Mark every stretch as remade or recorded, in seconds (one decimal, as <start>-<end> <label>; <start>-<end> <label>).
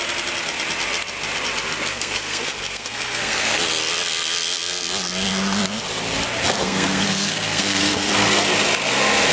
0.0-1.9 recorded; 1.9-3.6 remade; 3.6-6.6 recorded; 6.6-8.1 remade; 8.1-9.3 recorded